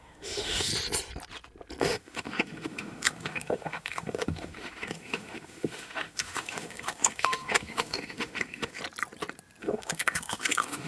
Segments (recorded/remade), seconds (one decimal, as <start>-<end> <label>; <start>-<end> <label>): 0.0-0.7 remade; 0.7-1.8 recorded; 1.8-8.8 remade; 8.8-9.6 recorded; 9.6-10.9 remade